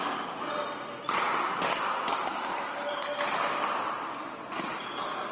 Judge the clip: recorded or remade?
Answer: recorded